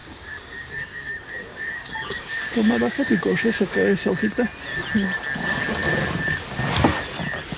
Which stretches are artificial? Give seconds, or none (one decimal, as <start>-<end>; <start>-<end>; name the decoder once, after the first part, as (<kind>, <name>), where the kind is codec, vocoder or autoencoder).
0.0-4.1 (codec, DAC)

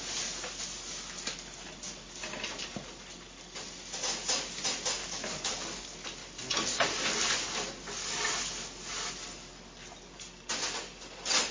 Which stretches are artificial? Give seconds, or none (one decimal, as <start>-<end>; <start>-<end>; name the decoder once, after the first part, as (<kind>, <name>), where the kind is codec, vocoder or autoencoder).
5.0-6.0 (codec, DAC)

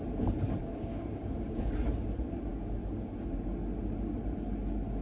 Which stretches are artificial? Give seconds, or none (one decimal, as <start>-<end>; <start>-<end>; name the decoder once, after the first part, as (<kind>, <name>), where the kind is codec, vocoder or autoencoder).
0.6-1.7 (codec, DAC); 2.5-3.2

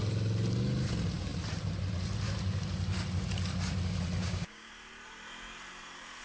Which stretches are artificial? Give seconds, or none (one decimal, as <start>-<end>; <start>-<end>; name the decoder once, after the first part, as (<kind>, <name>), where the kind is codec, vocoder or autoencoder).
4.2-4.7 (codec, DAC)

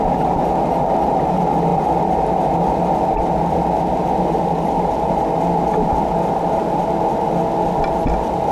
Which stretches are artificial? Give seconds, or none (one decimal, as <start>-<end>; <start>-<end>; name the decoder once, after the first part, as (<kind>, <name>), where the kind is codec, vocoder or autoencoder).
none

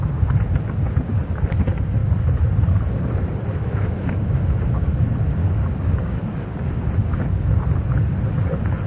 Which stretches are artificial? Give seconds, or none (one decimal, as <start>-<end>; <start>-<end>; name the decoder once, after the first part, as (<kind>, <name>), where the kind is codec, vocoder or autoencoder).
3.6-4.9 (codec, DAC); 5.4-6.8

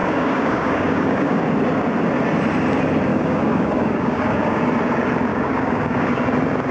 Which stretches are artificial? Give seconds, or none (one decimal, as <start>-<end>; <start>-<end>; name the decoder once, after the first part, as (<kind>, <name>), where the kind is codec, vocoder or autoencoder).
0.0-1.4 (codec, DAC); 3.1-4.6; 5.3-6.2

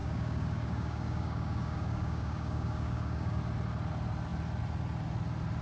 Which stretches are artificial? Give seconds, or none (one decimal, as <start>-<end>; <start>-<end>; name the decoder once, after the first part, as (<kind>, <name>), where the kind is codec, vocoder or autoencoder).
0.0-3.4 (codec, DAC)